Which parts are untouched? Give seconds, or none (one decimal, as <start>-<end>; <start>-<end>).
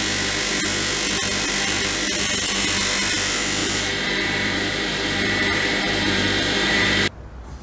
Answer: 0.0-3.6; 7.1-7.6